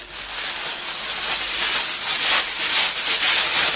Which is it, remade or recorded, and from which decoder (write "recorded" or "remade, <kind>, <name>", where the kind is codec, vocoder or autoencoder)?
recorded